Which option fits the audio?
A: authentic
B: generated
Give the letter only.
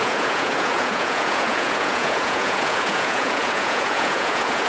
B